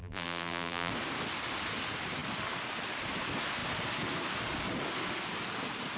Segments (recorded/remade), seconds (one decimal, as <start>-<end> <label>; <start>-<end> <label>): 0.0-0.9 remade; 0.9-6.0 recorded

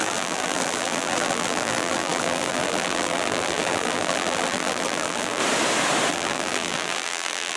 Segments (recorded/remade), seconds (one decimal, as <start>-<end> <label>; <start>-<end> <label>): 0.0-5.4 remade; 5.4-6.1 recorded; 6.1-7.6 remade